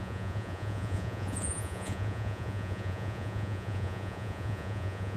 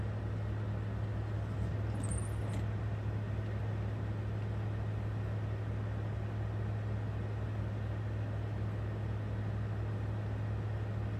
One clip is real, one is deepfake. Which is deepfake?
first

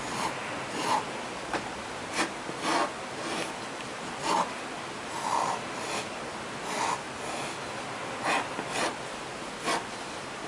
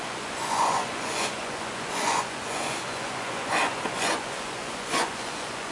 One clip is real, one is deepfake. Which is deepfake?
second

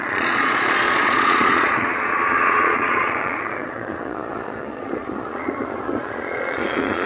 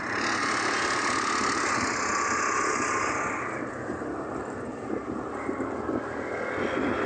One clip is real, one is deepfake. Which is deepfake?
first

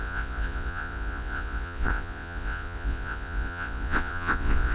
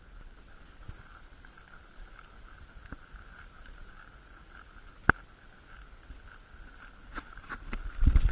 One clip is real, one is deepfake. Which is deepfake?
first